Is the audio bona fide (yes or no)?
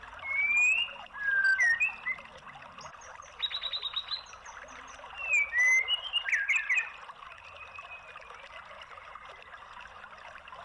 yes